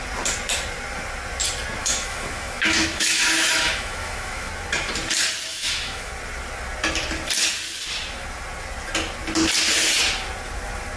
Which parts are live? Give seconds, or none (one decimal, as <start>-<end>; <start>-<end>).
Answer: 0.0-1.8; 4.5-5.5; 6.1-11.0